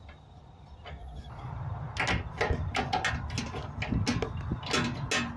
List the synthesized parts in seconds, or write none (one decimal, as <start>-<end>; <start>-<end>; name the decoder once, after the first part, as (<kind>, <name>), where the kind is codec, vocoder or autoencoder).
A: 1.0-1.5 (vocoder, Vocos)